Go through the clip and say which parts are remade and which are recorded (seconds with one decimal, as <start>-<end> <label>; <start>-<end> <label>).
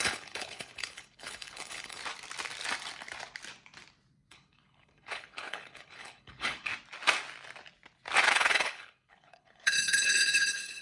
0.0-2.0 remade; 2.0-4.3 recorded; 4.3-6.7 remade; 6.7-8.3 recorded; 8.3-10.8 remade